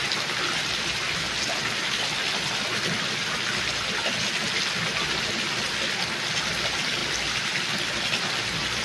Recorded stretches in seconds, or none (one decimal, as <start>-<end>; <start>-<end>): 0.0-8.8